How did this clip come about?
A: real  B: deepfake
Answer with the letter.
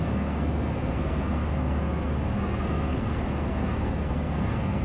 B